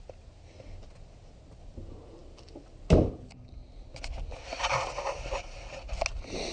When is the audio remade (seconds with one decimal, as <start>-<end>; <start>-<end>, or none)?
none